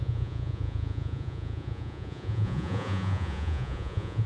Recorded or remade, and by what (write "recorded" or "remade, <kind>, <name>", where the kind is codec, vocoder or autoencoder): remade, vocoder, Vocos